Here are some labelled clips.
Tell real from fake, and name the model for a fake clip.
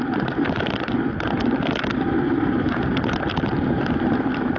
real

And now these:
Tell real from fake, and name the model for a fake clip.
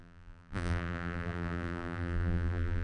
fake, vocoder, BigVGAN v2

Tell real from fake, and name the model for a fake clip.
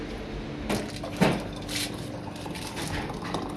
real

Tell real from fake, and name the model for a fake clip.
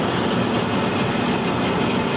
real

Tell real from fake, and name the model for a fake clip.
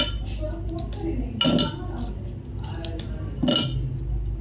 real